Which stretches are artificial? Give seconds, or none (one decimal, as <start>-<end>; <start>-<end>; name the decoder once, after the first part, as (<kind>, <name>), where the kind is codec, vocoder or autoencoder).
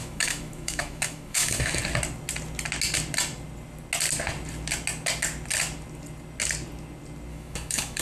0.0-1.8 (autoencoder, DAC-VAE); 7.3-8.0